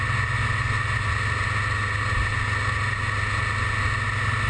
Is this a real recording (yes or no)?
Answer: yes